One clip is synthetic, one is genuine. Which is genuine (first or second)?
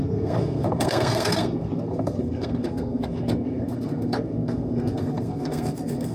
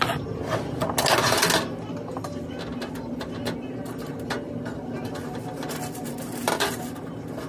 second